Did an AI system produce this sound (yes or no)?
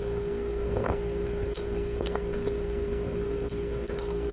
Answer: yes